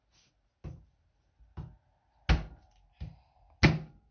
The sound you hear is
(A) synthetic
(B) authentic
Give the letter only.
B